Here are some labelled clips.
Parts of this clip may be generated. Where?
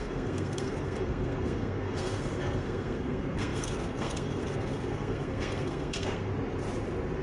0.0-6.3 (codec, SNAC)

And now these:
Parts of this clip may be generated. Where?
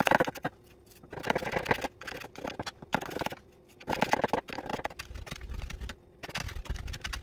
none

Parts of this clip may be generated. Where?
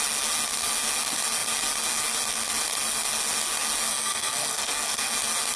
3.9-5.1 (codec, SNAC)